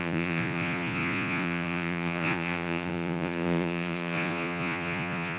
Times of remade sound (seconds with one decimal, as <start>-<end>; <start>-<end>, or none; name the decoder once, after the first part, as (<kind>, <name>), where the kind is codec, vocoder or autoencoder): 0.0-5.4 (vocoder, Vocos)